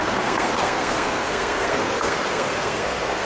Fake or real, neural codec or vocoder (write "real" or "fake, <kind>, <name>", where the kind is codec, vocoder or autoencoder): fake, codec, SNAC